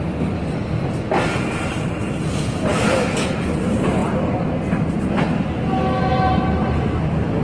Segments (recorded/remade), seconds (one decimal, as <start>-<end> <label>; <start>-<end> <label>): 0.0-2.7 recorded; 2.7-3.3 remade; 3.3-7.4 recorded